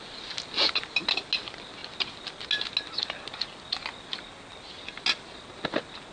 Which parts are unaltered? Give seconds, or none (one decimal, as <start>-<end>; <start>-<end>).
0.0-6.1